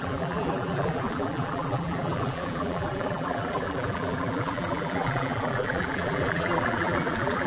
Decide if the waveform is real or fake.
fake